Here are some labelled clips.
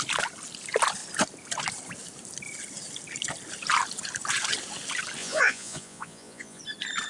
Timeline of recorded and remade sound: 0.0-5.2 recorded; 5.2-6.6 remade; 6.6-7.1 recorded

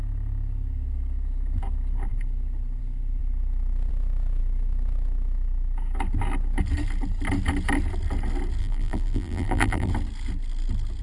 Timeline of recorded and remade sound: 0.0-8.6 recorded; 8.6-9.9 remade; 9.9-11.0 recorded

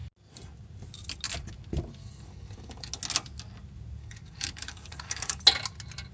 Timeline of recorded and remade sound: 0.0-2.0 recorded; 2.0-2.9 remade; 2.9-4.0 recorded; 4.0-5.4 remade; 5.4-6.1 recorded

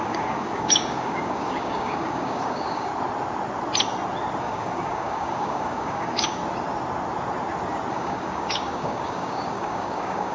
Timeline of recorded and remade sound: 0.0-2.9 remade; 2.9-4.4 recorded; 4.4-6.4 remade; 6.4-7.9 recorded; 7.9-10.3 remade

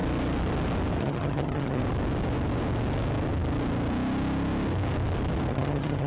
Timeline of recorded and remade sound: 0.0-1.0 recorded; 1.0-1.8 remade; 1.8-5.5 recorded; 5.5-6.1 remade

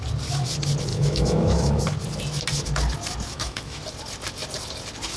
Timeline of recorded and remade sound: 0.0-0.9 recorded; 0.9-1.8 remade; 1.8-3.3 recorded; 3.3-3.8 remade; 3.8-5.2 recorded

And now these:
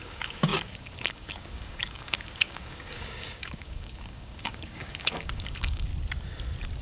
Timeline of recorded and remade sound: 0.0-5.9 remade; 5.9-6.8 recorded